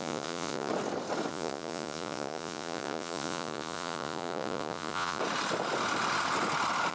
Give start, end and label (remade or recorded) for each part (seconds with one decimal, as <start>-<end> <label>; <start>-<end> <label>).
0.0-0.7 remade; 0.7-1.3 recorded; 1.3-5.2 remade; 5.2-6.9 recorded